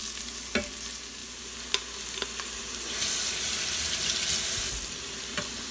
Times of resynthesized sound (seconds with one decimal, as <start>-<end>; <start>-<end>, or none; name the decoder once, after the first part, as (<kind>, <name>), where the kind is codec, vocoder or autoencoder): none